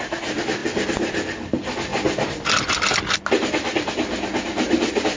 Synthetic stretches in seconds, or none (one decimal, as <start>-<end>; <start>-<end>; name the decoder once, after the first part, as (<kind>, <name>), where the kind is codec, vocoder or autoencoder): none